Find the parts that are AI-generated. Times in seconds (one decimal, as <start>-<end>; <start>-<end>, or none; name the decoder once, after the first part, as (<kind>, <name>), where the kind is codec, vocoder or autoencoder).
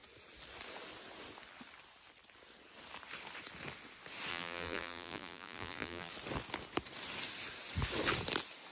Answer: 4.3-6.1 (vocoder, BigVGAN v2)